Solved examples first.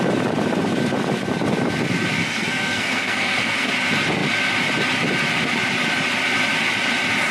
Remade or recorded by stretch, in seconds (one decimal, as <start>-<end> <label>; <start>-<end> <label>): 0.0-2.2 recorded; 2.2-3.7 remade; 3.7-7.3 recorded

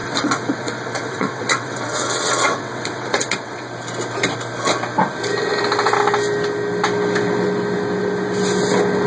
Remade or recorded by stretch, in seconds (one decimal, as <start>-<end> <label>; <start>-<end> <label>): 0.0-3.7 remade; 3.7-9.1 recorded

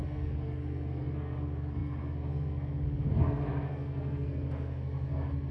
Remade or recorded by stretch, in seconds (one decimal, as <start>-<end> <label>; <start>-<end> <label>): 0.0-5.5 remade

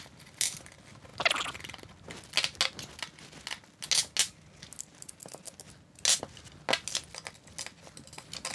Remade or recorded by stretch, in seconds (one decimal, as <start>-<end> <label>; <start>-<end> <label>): 0.0-8.5 recorded